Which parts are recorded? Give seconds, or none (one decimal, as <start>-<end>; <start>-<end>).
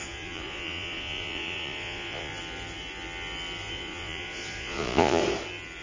2.3-3.7; 5.2-5.8